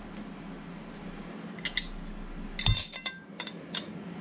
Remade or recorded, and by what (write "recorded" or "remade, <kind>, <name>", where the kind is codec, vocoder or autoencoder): recorded